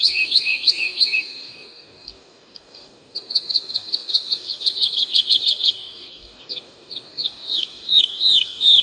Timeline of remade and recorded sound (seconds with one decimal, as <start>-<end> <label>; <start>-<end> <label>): 0.0-8.8 remade